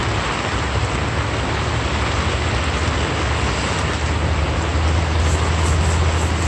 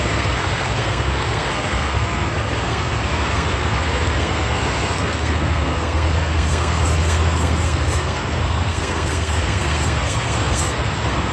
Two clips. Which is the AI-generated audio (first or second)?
second